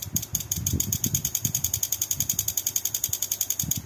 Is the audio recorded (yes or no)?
no